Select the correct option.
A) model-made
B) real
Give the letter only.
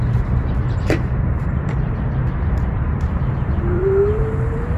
A